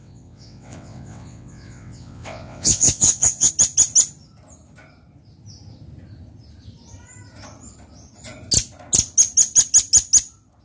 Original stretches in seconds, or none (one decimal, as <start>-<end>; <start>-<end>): 3.5-10.6